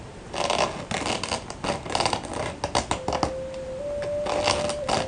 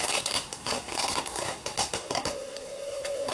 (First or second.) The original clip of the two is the first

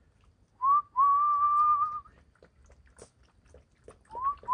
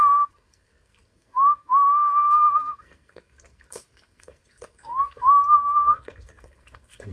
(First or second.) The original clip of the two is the first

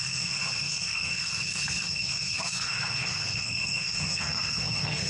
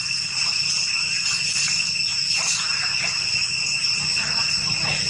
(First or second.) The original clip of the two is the second